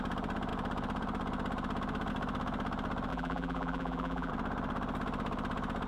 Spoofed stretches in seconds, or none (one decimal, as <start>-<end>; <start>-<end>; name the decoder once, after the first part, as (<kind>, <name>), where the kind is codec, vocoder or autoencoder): 3.1-4.3 (vocoder, BigVGAN v2)